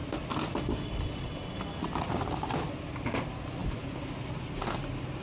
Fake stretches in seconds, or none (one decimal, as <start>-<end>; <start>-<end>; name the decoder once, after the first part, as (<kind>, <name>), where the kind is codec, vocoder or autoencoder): none